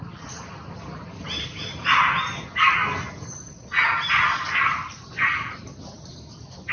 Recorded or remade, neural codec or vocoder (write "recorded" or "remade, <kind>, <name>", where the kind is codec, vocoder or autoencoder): recorded